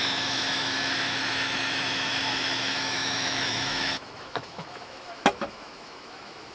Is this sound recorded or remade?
remade